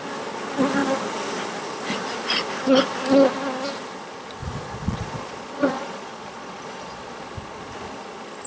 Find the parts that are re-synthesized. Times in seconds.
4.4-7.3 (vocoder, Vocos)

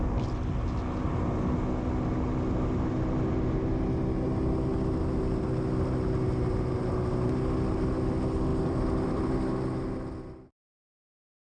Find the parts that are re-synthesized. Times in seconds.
8.5-9.2 (vocoder, BigVGAN v2)

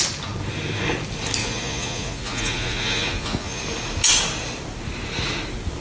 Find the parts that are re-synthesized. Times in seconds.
1.4-3.6 (vocoder, Vocos)

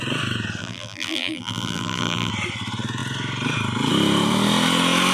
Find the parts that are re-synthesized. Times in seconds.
0.6-2.3 (vocoder, BigVGAN v2)

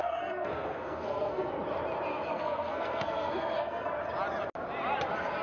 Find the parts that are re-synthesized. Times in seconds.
0.0-1.5 (codec, SNAC); 2.1-3.9